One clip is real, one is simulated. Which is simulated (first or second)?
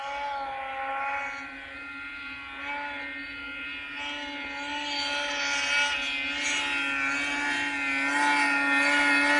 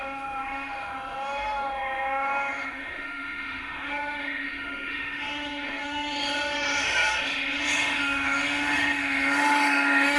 second